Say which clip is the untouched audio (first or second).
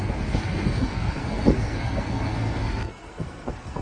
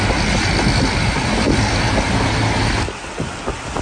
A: second